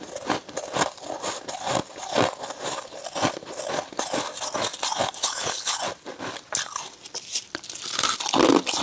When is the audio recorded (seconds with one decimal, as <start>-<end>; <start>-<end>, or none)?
0.0-5.2; 5.8-8.8